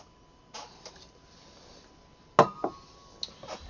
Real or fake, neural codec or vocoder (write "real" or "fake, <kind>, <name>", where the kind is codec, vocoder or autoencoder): real